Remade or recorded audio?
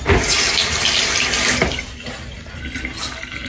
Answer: recorded